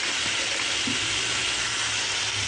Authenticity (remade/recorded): recorded